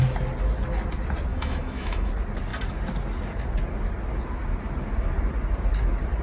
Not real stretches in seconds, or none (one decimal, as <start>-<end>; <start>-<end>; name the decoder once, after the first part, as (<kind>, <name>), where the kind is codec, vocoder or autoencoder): 1.3-2.1 (autoencoder, DAC-VAE)

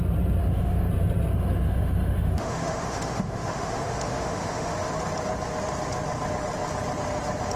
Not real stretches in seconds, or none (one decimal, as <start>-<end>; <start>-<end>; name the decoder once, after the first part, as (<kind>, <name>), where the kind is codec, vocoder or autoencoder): 0.4-0.9 (autoencoder, DAC-VAE); 1.3-4.9

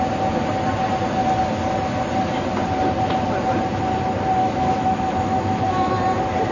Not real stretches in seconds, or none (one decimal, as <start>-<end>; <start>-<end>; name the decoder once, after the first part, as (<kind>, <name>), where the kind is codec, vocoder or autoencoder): 4.4-5.9 (autoencoder, DAC-VAE)

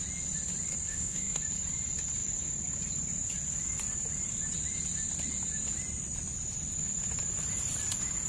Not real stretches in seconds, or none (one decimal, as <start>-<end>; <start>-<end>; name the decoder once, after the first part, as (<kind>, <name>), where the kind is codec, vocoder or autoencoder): 0.9-1.4 (autoencoder, DAC-VAE)

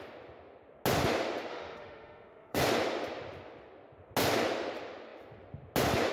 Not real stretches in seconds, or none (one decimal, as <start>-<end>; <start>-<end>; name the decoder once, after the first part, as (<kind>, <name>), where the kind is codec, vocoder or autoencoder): 1.5-2.6 (autoencoder, DAC-VAE)